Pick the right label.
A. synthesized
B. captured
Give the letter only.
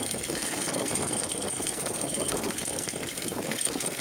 A